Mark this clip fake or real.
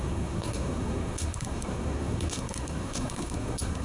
fake